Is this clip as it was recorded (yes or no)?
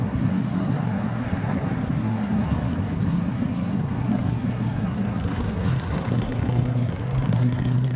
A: no